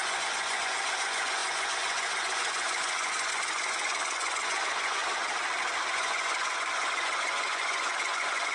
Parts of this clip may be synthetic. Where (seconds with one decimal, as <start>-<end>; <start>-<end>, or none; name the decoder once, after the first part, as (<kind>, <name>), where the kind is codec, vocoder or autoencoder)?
0.0-5.0 (vocoder, Vocos); 5.9-8.5